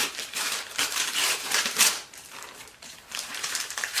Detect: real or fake fake